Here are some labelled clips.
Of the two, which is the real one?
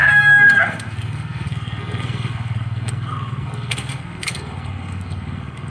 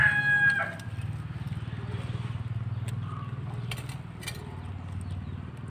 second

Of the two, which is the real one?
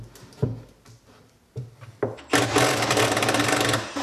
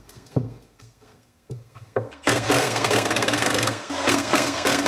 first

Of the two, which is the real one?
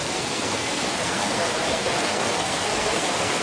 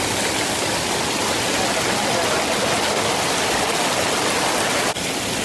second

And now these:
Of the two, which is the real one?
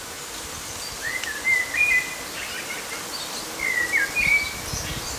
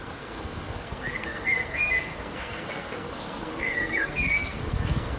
first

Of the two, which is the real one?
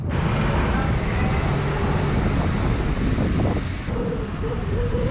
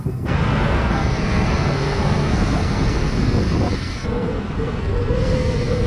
first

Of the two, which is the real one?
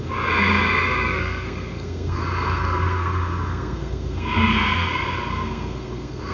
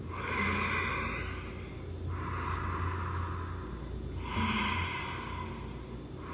second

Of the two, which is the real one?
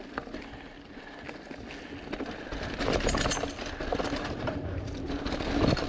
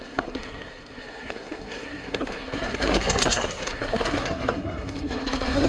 first